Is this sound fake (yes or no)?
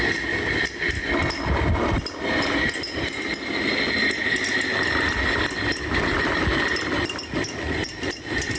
no